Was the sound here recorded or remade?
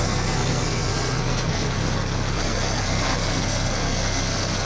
remade